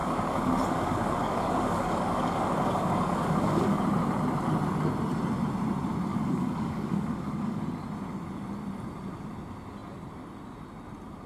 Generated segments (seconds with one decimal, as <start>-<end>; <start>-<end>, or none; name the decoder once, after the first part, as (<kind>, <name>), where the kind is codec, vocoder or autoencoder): 0.0-3.8 (codec, DAC); 6.1-7.6